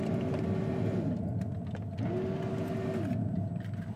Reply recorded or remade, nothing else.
recorded